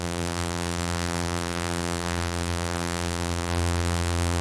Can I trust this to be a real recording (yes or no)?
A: no